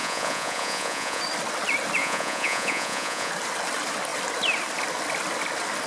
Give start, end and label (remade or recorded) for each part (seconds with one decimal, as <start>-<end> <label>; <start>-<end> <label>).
0.0-1.2 remade; 1.2-2.0 recorded; 2.0-3.3 remade; 3.3-5.9 recorded